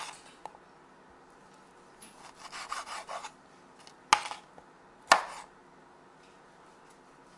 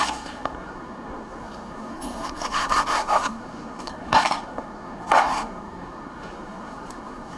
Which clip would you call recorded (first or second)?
first